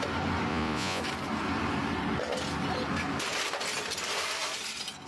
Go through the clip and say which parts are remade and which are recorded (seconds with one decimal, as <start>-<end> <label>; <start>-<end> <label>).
0.0-0.5 recorded; 0.5-1.0 remade; 1.0-5.1 recorded